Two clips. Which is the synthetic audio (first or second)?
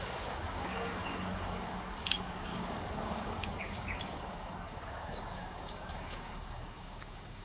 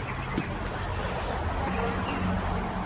first